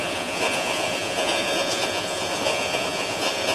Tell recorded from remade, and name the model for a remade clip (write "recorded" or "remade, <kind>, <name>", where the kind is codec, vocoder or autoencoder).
remade, vocoder, Vocos